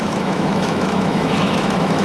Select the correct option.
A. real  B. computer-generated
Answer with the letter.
B